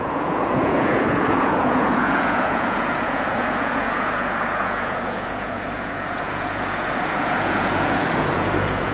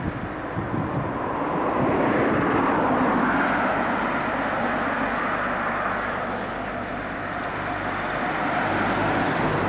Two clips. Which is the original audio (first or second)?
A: second